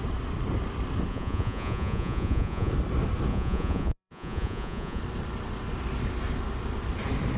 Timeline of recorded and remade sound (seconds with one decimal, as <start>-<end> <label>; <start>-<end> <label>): 0.0-1.1 recorded; 1.1-2.7 remade; 2.7-3.3 recorded; 3.3-5.0 remade; 5.0-7.4 recorded